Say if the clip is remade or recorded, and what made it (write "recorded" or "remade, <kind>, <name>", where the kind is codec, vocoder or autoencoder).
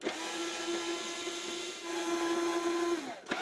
recorded